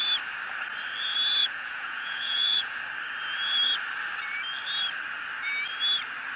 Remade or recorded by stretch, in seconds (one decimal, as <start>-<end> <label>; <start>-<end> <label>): 0.0-1.4 recorded; 1.4-2.8 remade; 2.8-6.4 recorded